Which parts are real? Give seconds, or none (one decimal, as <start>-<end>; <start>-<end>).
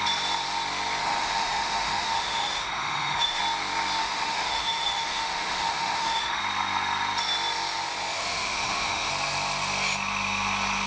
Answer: 0.0-1.0; 3.4-4.0; 6.4-8.2; 9.1-10.9